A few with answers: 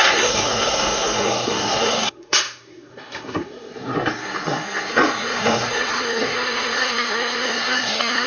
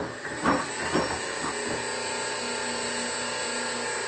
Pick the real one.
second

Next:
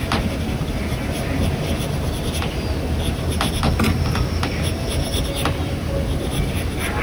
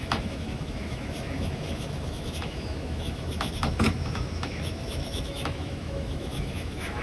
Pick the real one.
first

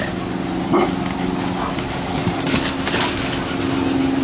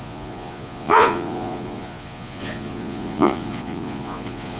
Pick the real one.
first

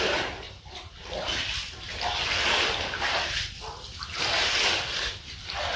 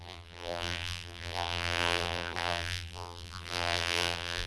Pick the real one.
first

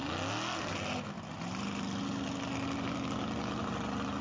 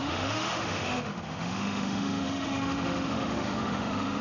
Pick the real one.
first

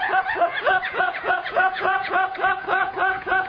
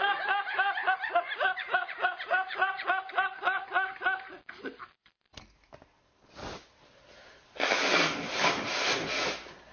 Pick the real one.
second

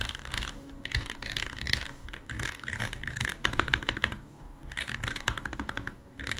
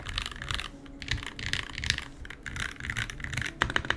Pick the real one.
second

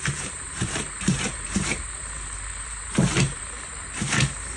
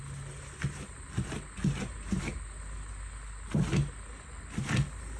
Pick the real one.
second